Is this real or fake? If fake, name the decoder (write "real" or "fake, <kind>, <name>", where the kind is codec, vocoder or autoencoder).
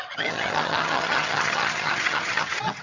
fake, vocoder, HiFi-GAN